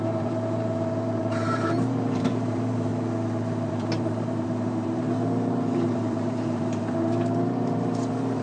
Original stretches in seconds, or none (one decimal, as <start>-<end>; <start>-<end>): 2.9-3.7